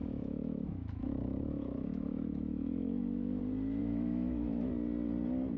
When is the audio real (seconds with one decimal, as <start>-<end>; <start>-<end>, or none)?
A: 3.4-3.8; 4.7-5.6